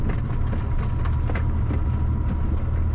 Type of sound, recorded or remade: recorded